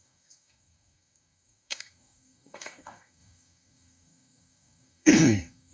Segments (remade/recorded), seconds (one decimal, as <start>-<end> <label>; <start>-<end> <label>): 0.0-5.7 remade